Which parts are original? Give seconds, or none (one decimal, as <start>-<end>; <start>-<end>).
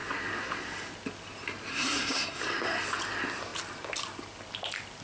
0.0-1.7; 2.4-5.0